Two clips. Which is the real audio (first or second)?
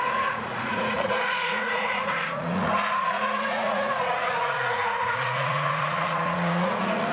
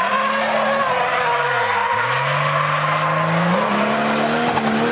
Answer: second